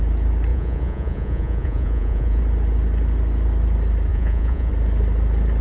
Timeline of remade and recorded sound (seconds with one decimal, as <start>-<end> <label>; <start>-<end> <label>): 0.0-0.5 recorded; 0.5-2.4 remade; 2.4-4.1 recorded; 4.1-4.7 remade; 4.7-5.6 recorded